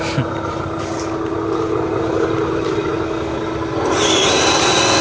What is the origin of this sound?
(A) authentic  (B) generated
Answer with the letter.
A